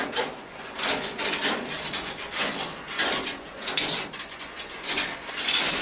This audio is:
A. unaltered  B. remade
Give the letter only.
B